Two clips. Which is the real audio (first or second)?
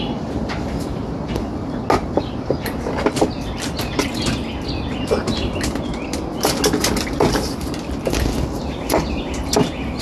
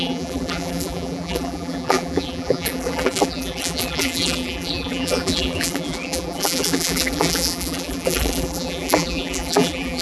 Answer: first